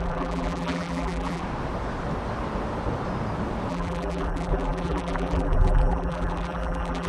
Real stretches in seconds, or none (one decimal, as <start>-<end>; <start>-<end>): 1.4-3.7